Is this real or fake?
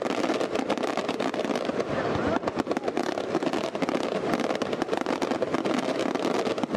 real